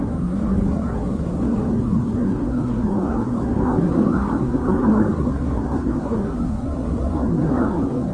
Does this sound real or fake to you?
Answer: fake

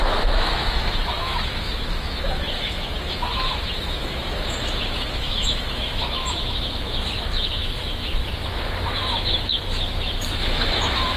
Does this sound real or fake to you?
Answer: fake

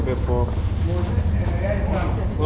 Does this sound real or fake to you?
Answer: real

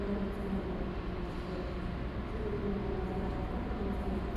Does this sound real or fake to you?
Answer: real